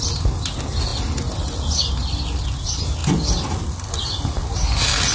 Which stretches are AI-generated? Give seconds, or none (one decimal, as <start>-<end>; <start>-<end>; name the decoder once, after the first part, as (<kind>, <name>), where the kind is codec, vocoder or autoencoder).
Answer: none